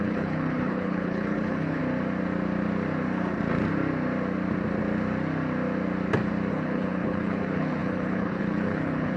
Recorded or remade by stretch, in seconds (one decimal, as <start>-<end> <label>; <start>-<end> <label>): 0.0-1.8 remade; 1.8-6.5 recorded; 6.5-9.2 remade